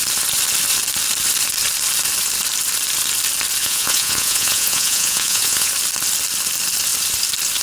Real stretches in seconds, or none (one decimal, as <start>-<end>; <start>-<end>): 0.0-3.6; 5.7-7.6